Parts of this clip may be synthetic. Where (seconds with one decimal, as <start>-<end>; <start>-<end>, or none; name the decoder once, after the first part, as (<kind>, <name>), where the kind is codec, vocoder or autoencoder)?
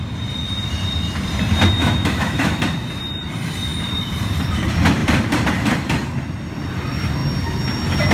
1.8-2.6 (autoencoder, DAC-VAE)